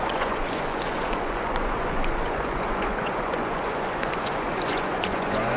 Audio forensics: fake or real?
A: fake